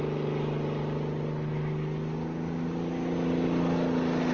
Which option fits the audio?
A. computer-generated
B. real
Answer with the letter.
B